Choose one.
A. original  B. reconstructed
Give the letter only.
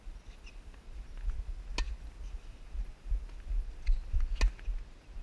A